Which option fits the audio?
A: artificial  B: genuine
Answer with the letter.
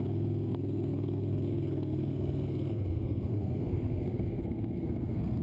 A